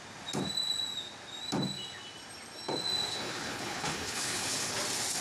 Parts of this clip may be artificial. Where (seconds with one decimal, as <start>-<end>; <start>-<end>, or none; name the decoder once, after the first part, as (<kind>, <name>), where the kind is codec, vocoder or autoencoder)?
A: 3.1-4.7 (codec, HILCodec)

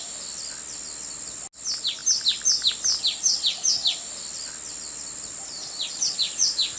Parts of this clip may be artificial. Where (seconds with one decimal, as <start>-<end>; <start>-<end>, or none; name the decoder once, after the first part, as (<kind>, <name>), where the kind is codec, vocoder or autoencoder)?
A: none

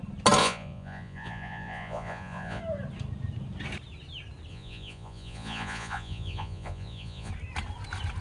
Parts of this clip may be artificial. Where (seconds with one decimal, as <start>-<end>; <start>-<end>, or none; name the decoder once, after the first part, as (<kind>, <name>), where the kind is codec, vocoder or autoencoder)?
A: 0.4-2.6 (vocoder, Vocos); 4.5-7.3

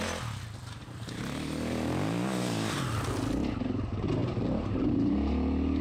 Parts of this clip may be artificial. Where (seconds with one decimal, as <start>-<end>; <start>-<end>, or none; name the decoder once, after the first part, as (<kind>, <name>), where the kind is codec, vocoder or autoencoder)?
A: 0.6-1.2 (vocoder, BigVGAN v2); 4.2-4.9

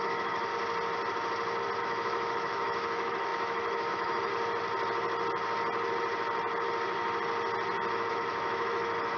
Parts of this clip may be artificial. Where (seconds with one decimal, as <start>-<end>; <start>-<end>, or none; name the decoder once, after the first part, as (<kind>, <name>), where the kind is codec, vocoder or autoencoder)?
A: 0.0-0.5 (autoencoder, DAC-VAE); 1.8-4.3; 8.1-9.2

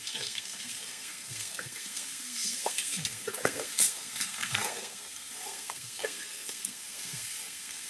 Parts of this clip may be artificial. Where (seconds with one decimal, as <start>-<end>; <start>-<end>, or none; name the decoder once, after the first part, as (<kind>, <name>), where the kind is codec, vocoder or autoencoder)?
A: 0.0-7.9 (codec, SNAC)